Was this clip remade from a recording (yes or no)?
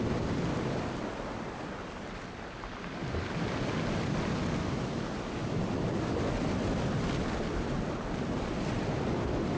no